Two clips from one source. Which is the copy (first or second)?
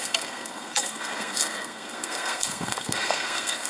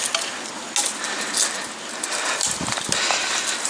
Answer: first